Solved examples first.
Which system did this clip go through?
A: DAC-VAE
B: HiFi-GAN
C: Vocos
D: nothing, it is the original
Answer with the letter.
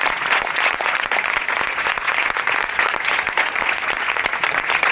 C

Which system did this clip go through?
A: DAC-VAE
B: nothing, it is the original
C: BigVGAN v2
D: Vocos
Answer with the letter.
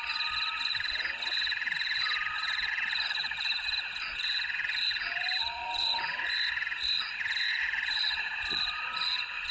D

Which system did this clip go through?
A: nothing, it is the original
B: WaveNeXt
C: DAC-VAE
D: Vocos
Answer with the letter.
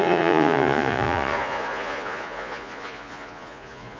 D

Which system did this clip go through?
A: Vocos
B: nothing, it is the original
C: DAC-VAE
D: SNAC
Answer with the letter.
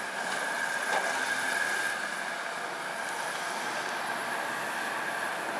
B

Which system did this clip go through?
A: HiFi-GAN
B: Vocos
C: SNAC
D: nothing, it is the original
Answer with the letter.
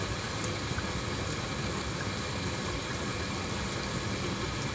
D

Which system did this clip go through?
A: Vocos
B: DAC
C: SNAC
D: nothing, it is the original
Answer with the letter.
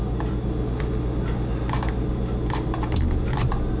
D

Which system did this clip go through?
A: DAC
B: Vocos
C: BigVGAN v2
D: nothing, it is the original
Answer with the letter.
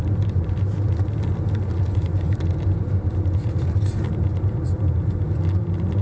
D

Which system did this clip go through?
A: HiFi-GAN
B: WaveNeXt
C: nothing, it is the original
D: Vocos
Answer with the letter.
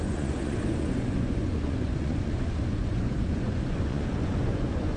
D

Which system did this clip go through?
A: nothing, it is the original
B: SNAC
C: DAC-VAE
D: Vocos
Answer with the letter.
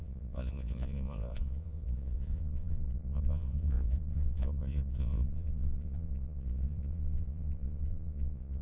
D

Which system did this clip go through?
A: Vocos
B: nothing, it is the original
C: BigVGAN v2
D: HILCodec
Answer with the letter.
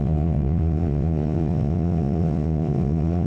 A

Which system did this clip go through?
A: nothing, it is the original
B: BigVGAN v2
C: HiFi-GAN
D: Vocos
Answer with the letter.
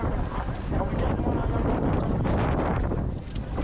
A